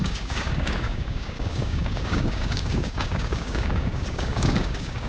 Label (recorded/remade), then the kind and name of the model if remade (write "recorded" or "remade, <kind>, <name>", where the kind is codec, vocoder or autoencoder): remade, codec, DAC